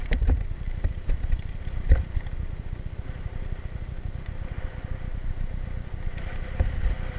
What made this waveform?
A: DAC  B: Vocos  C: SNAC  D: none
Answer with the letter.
D